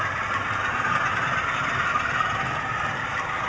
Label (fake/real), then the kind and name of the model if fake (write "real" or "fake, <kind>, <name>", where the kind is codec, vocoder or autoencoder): real